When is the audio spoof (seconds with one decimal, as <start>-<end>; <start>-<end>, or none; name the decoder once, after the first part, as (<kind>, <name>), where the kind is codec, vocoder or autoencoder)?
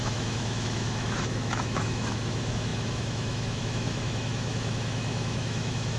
0.0-6.0 (autoencoder, DAC-VAE)